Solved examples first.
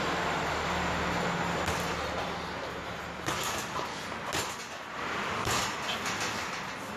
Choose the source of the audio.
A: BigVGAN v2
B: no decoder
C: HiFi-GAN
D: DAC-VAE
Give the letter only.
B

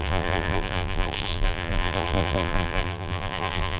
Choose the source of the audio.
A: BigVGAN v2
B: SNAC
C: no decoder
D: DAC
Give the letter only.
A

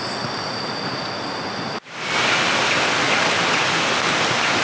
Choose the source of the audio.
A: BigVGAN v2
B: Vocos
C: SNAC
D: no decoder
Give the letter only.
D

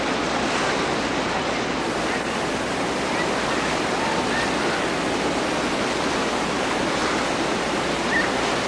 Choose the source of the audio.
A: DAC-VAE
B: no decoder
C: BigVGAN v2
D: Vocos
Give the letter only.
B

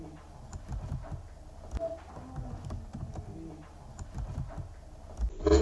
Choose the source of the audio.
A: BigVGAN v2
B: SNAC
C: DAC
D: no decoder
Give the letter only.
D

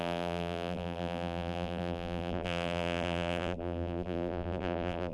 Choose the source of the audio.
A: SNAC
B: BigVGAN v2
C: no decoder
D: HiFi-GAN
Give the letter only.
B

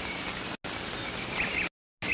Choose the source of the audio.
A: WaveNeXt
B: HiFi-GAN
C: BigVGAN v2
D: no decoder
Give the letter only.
D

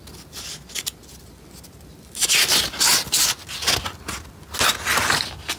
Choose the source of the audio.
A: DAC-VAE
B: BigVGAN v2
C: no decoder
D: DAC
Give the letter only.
C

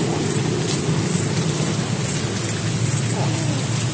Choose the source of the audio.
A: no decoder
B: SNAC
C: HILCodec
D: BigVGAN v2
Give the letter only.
A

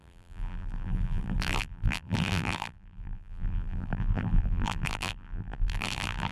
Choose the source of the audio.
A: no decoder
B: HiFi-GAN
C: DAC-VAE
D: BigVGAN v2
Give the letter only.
D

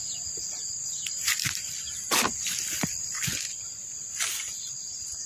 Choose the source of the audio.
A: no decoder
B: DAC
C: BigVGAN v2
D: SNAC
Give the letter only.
C